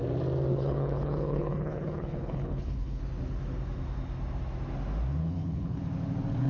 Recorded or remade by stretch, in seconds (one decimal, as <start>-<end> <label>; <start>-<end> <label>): 0.0-0.5 recorded; 0.5-3.0 remade; 3.0-5.2 recorded; 5.2-5.8 remade; 5.8-6.5 recorded